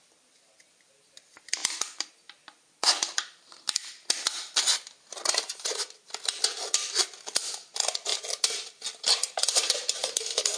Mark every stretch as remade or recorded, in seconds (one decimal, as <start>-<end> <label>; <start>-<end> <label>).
0.0-10.0 recorded; 10.0-10.6 remade

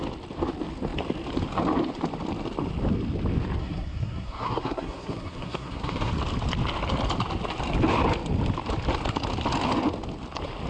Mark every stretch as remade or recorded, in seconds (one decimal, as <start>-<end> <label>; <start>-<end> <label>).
0.0-3.6 recorded; 3.6-6.1 remade; 6.1-10.7 recorded

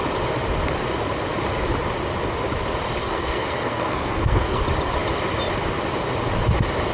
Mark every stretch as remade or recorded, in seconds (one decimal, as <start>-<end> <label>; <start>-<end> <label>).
0.0-3.0 recorded; 3.0-4.6 remade; 4.6-6.9 recorded

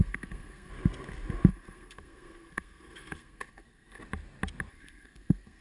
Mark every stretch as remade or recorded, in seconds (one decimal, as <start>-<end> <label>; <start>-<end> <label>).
0.0-0.7 remade; 0.7-1.5 recorded; 1.5-4.0 remade; 4.0-4.7 recorded; 4.7-5.6 remade

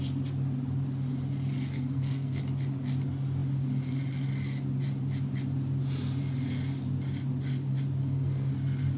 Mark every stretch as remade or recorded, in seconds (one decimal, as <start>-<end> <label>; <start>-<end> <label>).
0.0-1.7 recorded; 1.7-2.4 remade; 2.4-8.0 recorded; 8.0-8.5 remade; 8.5-9.0 recorded

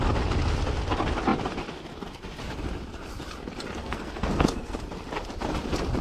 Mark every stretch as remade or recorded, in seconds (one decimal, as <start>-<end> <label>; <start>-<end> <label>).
0.0-3.8 recorded; 3.8-4.8 remade; 4.8-6.0 recorded